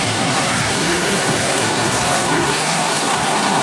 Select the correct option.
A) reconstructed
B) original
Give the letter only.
A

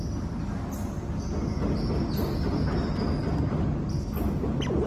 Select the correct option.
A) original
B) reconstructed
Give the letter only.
A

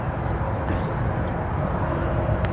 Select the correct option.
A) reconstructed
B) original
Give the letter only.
B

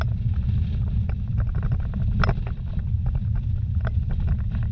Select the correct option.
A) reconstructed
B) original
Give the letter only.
B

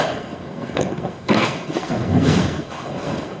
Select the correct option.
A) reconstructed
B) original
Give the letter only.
A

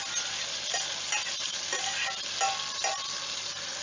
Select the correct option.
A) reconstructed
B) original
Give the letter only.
B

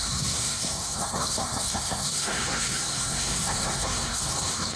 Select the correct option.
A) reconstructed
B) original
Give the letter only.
A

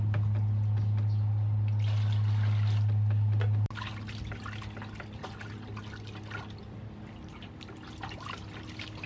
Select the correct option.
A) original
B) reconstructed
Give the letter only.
A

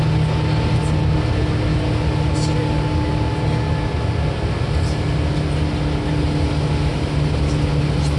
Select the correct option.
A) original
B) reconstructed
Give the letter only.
A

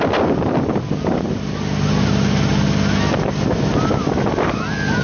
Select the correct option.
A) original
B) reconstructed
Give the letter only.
A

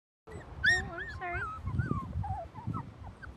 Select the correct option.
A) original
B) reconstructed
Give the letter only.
A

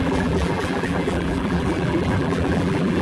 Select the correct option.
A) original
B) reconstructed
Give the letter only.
B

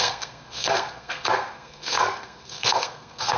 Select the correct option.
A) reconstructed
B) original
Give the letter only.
A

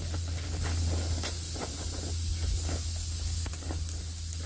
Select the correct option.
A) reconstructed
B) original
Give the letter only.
B